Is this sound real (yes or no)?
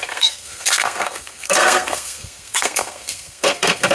no